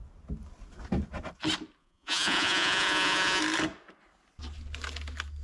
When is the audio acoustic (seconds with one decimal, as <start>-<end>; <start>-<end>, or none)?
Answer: 0.0-1.8; 3.4-5.4